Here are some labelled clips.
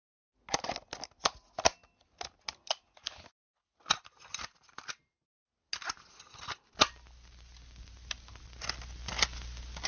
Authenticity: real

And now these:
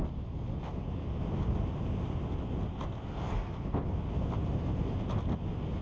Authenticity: real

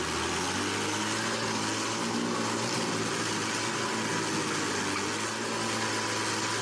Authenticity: real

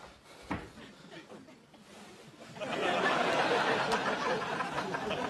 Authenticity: real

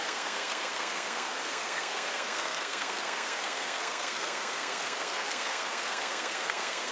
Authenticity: fake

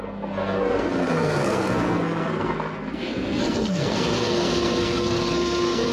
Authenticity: fake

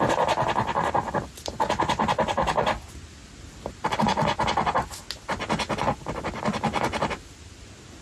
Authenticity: real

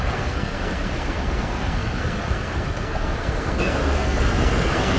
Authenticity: fake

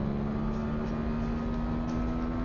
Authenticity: real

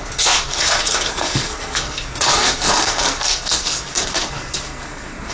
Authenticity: fake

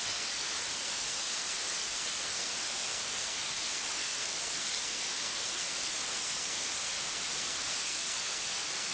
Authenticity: fake